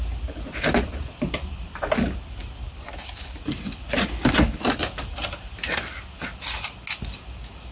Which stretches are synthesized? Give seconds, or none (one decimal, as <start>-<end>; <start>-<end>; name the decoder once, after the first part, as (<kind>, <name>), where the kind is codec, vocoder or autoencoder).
none